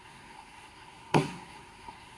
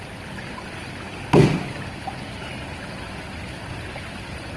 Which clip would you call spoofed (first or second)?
first